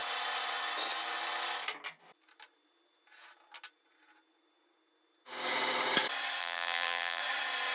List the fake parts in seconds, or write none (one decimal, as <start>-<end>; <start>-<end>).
6.4-7.2